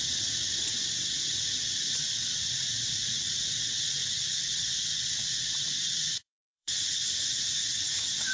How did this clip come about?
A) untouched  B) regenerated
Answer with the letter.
B